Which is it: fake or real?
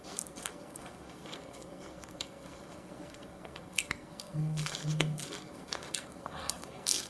fake